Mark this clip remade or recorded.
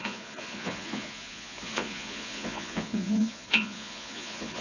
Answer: remade